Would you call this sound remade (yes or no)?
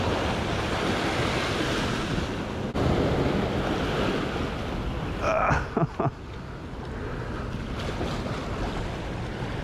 no